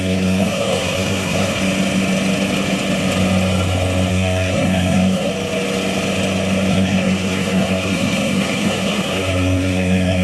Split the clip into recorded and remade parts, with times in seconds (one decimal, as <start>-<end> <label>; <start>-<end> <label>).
0.0-1.6 remade; 1.6-4.1 recorded; 4.1-5.3 remade; 5.3-6.7 recorded; 6.7-10.2 remade